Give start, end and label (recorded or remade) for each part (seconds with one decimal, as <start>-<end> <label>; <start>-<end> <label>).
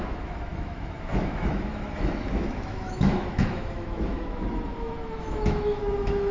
0.0-6.3 remade